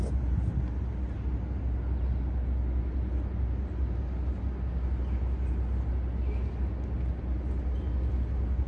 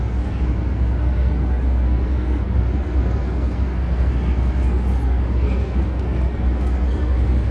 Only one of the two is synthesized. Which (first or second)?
second